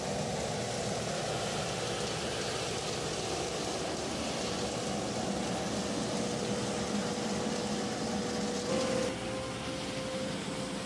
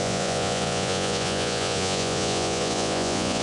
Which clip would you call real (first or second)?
first